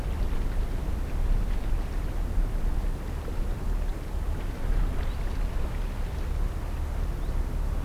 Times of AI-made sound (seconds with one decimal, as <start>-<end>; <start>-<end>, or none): none